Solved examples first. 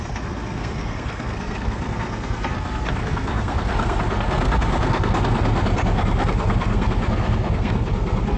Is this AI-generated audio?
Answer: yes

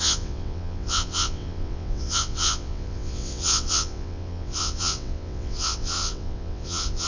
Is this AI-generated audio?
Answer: yes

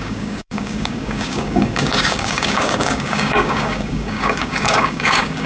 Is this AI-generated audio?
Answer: yes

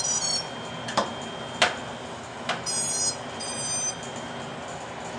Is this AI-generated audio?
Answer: no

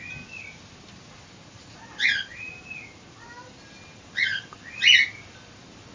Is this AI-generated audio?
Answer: no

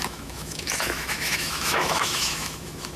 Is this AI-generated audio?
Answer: yes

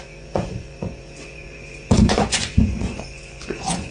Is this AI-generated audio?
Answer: yes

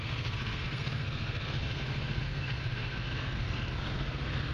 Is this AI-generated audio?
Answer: yes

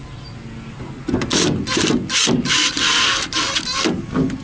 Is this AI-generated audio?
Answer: no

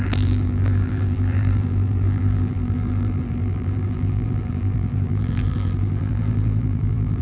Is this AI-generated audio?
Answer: yes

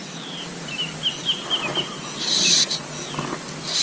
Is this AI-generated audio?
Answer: no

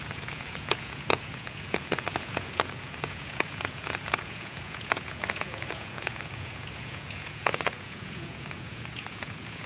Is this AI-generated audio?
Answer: yes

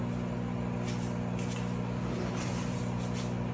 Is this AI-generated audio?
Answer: no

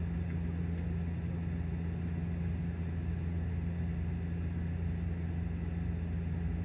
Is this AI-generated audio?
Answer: no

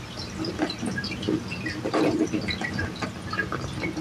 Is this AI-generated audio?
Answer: no